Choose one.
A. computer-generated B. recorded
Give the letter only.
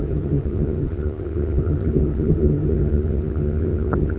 A